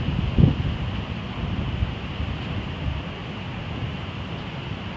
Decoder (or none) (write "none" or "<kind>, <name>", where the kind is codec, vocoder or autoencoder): none